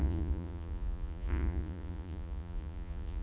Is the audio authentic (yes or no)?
no